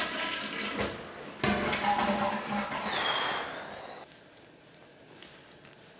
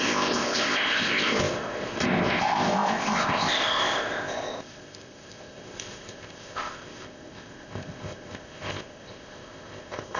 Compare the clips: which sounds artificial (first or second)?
second